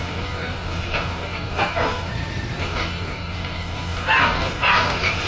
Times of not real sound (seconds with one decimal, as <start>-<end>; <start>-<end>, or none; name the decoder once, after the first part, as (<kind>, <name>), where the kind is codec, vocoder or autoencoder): 0.0-2.1 (codec, DAC); 2.6-5.3